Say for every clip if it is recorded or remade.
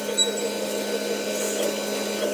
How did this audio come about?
recorded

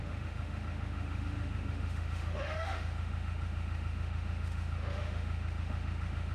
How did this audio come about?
remade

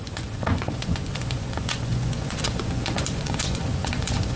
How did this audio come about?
remade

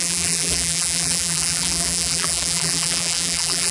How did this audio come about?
remade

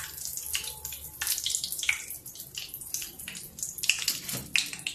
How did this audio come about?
recorded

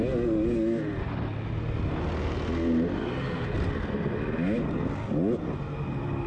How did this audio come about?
recorded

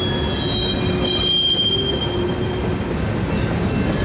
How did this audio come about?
recorded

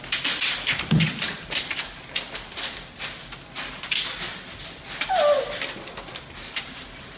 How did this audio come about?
recorded